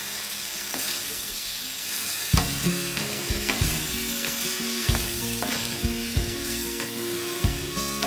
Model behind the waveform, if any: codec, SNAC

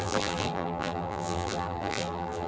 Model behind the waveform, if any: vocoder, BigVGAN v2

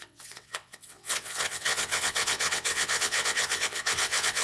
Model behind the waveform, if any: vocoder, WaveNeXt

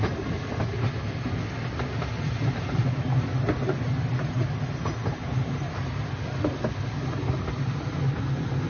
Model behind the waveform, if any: none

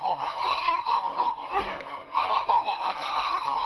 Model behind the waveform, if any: codec, SNAC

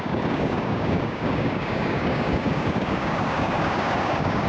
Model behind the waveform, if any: codec, DAC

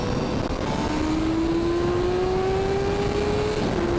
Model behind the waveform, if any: none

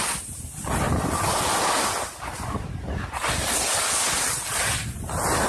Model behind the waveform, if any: none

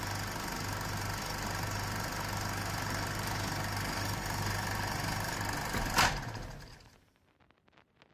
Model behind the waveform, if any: none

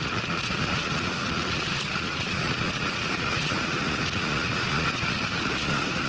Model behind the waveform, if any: vocoder, Vocos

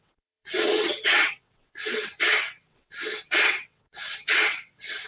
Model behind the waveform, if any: vocoder, WaveNeXt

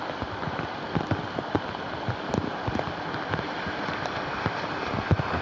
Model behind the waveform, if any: none